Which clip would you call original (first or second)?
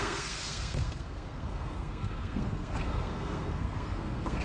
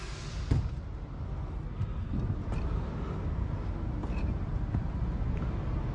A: second